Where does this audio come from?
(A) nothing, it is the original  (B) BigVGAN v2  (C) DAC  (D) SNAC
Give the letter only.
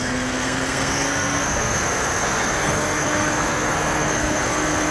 D